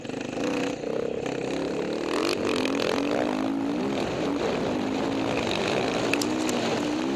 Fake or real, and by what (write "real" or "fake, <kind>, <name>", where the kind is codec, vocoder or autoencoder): real